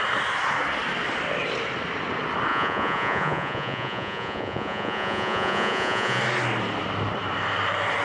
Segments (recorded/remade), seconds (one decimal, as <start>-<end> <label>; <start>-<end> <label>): 0.0-2.5 recorded; 2.5-6.2 remade; 6.2-8.0 recorded